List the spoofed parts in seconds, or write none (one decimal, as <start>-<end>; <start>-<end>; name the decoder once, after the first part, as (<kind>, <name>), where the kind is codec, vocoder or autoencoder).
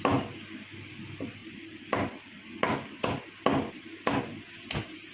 none